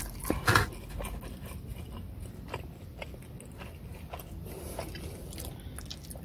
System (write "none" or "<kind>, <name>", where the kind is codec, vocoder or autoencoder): none